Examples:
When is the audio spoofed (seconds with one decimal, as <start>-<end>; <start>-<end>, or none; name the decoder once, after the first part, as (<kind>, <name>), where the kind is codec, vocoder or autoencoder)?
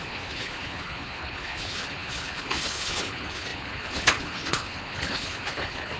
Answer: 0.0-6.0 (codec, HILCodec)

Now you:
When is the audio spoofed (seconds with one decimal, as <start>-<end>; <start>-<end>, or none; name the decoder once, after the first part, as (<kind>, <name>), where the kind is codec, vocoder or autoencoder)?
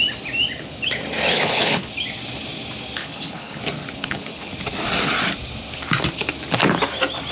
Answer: 1.3-1.9 (codec, HILCodec); 3.0-3.6; 4.0-4.5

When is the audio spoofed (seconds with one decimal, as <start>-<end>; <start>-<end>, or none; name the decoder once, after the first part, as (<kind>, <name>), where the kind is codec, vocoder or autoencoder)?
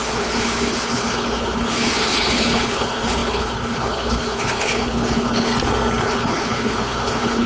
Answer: 0.0-5.5 (codec, HILCodec); 6.0-7.5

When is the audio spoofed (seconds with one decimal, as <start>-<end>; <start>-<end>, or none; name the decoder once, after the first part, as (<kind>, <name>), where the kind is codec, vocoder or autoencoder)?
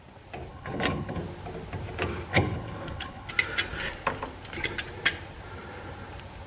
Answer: 0.5-1.2 (codec, HILCodec); 2.3-3.3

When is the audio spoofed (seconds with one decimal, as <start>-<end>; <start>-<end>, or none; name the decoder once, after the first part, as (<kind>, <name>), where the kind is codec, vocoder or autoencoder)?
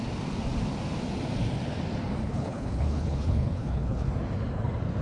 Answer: 2.2-4.1 (codec, HILCodec)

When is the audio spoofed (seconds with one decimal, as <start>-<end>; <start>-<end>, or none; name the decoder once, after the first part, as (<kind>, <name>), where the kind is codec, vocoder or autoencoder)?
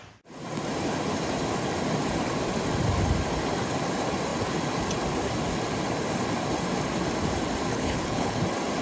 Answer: 7.7-8.4 (codec, HILCodec)